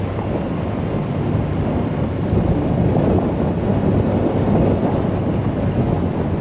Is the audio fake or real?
real